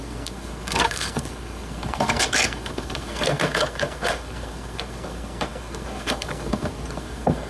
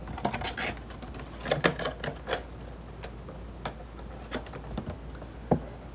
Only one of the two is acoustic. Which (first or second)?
second